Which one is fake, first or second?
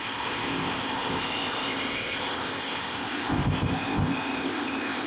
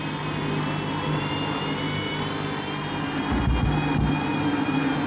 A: first